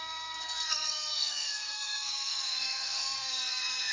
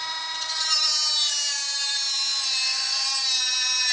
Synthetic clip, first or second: first